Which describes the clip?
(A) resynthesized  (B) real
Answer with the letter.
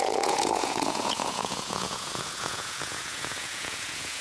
A